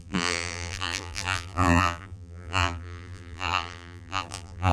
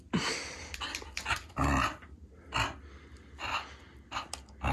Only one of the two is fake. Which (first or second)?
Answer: first